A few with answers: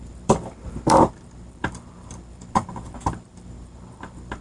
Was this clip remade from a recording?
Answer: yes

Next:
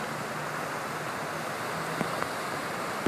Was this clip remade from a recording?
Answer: no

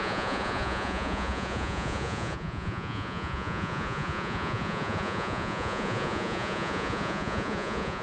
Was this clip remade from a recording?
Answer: yes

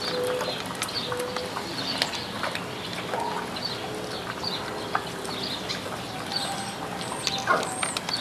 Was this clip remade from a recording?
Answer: no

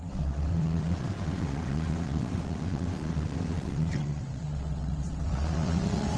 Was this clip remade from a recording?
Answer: yes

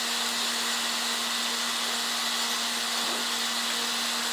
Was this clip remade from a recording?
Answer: no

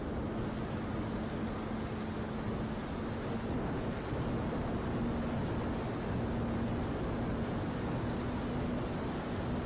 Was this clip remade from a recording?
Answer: no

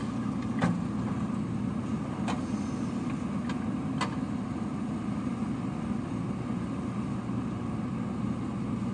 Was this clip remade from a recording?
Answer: no